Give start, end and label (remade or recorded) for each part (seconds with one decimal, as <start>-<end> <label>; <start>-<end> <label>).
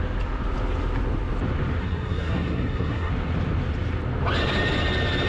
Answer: 0.0-1.8 recorded; 1.8-3.1 remade; 3.1-5.3 recorded